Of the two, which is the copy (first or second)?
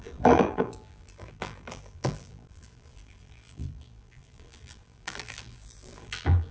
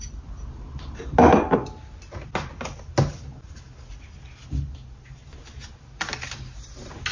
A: first